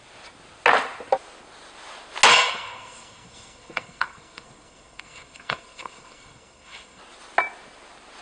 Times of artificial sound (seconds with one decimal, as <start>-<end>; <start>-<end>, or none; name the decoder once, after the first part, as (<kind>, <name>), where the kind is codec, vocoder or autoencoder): 2.3-7.0 (codec, SNAC)